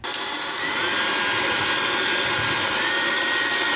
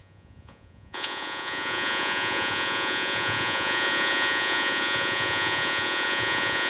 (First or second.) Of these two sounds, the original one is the first